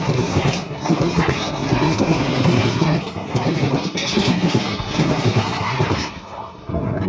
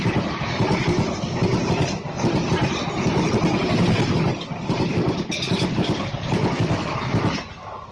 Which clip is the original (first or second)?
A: second